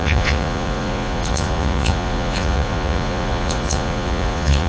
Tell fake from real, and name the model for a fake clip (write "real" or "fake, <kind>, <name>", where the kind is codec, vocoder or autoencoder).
fake, vocoder, Vocos